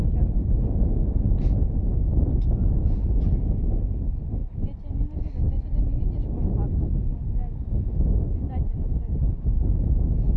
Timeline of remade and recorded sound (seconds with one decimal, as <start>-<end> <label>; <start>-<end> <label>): 0.0-10.4 recorded